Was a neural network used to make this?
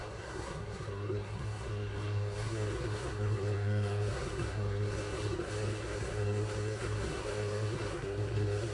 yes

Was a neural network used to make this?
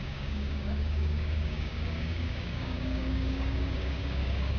yes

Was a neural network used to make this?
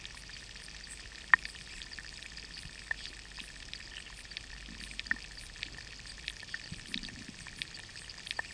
yes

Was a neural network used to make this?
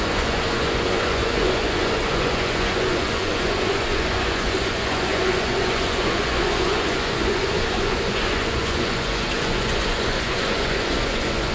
yes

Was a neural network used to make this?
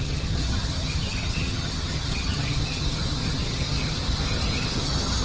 yes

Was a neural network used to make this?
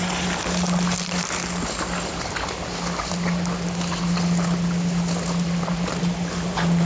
no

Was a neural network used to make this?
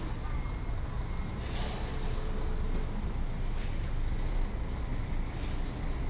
no